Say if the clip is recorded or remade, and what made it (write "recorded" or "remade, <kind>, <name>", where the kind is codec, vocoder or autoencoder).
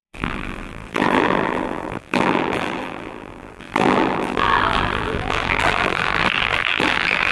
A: remade, vocoder, BigVGAN v2